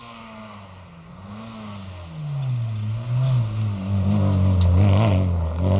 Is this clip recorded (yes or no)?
yes